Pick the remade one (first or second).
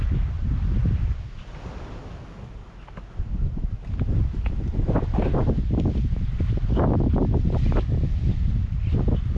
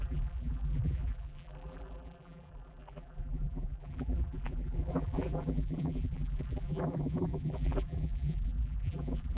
second